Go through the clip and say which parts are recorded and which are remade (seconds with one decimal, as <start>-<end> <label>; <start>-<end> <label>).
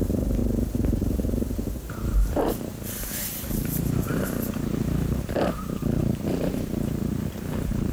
0.0-7.9 remade